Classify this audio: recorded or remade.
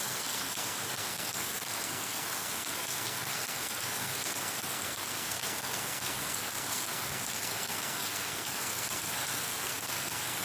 remade